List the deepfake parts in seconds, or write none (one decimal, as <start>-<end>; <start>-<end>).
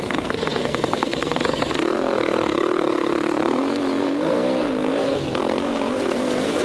0.0-6.6